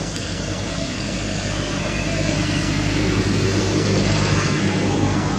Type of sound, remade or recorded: remade